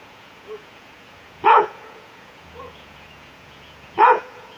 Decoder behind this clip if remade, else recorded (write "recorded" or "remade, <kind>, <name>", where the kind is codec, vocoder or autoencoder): remade, vocoder, Vocos